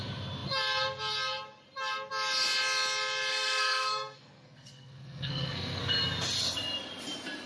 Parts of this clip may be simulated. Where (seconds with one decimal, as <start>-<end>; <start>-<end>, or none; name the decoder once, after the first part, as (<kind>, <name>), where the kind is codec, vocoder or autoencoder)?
3.3-5.8 (codec, SNAC)